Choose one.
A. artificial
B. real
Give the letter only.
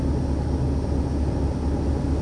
B